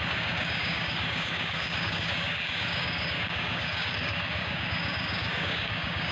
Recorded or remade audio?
remade